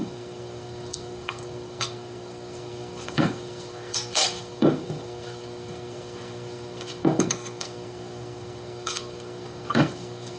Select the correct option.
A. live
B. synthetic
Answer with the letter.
B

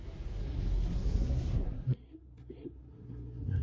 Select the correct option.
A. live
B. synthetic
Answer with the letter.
B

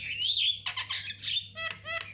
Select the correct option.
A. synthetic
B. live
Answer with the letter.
B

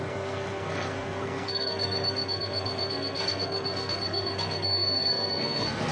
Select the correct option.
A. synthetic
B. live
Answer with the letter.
A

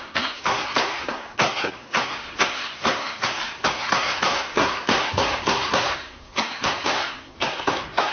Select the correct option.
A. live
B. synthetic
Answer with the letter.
B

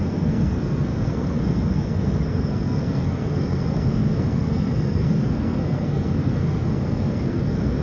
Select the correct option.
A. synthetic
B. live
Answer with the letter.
A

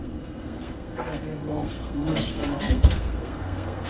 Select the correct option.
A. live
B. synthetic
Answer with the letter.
B